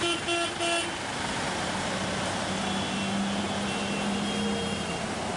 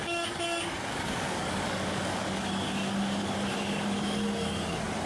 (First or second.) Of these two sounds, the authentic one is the first